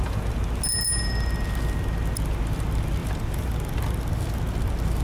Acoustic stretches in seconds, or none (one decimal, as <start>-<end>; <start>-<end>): 0.0-5.0